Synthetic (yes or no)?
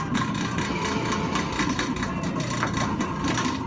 no